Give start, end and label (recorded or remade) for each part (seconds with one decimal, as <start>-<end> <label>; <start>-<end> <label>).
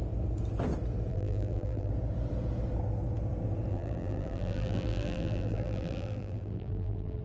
0.0-1.1 recorded; 1.1-1.9 remade; 1.9-3.7 recorded; 3.7-7.2 remade